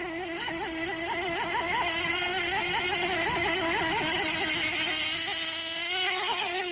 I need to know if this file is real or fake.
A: real